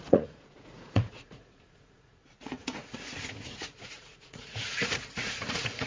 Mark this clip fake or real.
fake